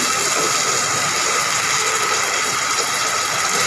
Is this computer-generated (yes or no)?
no